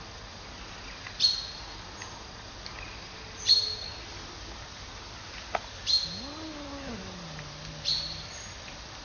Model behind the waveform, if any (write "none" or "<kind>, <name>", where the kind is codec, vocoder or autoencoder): none